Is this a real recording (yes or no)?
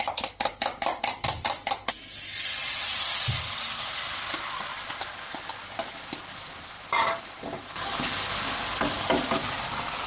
yes